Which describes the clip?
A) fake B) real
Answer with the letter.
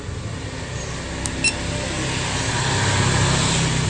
B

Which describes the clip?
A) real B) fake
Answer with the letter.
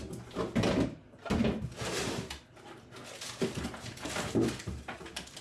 A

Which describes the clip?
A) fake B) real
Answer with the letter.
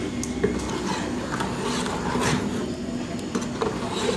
B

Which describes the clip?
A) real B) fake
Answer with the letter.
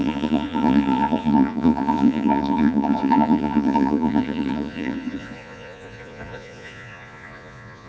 B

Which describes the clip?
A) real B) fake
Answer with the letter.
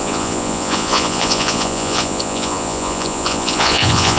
B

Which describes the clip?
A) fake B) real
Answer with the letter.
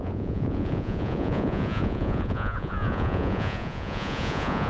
A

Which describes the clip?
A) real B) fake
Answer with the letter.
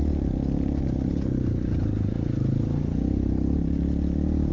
A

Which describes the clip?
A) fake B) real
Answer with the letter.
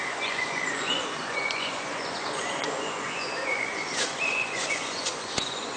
A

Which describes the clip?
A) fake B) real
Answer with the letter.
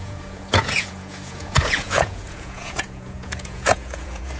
A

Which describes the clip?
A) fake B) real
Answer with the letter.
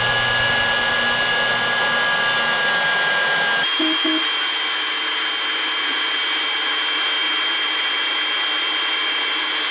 B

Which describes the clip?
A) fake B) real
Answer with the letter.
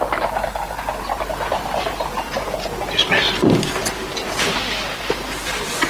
B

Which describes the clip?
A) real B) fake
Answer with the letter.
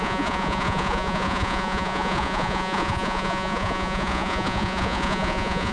B